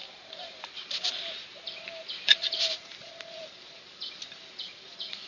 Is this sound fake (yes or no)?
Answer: no